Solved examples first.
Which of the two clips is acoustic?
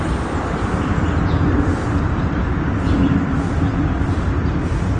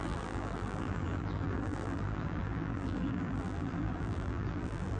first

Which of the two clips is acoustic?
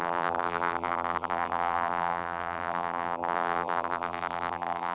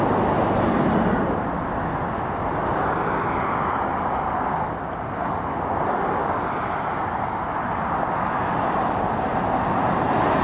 second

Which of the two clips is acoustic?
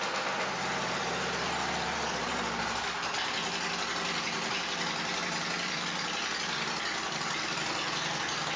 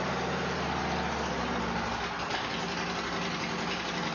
second